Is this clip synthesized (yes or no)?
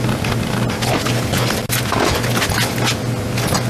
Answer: no